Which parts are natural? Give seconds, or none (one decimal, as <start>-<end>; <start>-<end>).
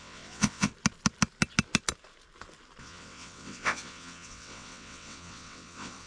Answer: 0.7-2.8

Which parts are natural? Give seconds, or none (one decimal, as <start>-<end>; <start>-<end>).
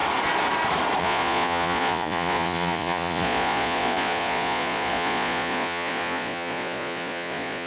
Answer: 0.0-1.0